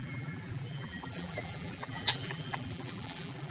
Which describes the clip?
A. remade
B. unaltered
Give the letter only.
A